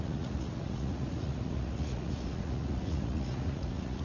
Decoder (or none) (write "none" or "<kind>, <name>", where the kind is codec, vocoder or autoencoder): vocoder, Vocos